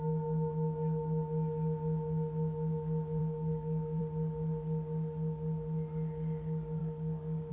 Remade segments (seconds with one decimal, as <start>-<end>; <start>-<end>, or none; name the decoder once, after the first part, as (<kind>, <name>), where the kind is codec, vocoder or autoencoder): 3.2-4.0 (codec, DAC); 6.8-7.5